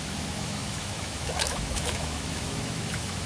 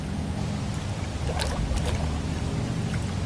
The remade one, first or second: first